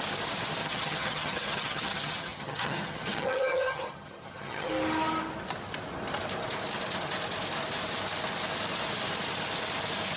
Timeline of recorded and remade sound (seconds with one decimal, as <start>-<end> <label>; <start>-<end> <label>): 0.0-0.6 recorded; 0.6-4.7 remade; 4.7-10.2 recorded